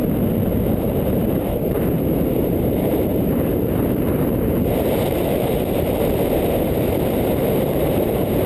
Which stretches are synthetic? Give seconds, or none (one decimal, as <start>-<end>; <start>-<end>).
0.7-8.5